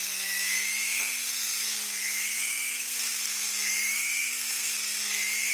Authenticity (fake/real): fake